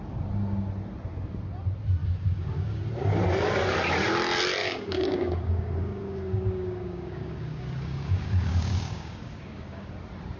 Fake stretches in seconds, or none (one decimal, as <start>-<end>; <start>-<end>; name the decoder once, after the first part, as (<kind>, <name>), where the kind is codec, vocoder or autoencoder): 2.0-2.8 (codec, DAC); 4.6-9.9